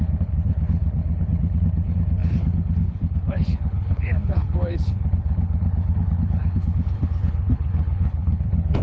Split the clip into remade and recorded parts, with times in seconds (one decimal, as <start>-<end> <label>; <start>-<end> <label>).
0.0-8.8 remade